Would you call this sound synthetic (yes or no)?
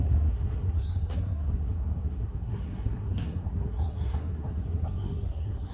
yes